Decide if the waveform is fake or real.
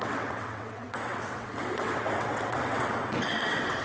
fake